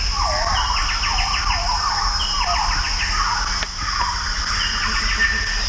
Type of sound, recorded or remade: recorded